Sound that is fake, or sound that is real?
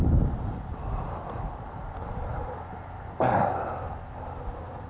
real